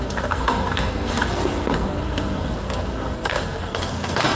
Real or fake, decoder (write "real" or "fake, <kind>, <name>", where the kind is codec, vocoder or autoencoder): fake, codec, SNAC